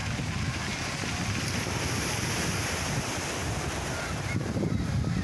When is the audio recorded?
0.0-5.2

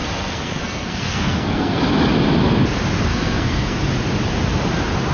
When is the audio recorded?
1.8-3.1; 3.8-5.1

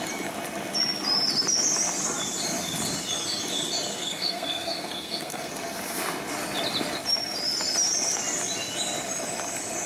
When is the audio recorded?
0.0-3.9; 5.5-9.9

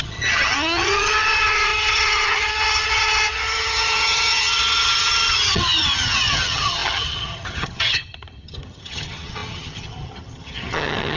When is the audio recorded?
none

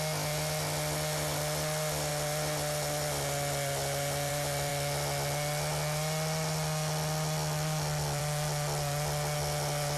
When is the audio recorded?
0.0-10.0

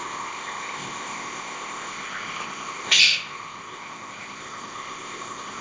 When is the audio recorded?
none

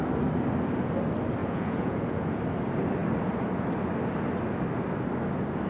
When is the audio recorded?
0.0-1.4; 2.4-5.7

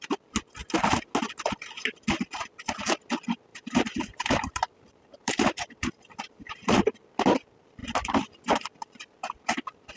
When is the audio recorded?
0.0-0.6; 1.1-3.5; 6.0-10.0